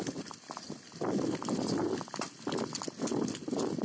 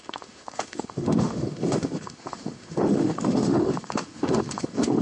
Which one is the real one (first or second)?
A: first